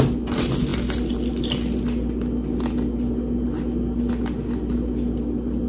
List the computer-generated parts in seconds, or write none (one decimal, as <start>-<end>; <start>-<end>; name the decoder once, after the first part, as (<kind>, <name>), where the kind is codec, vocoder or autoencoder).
none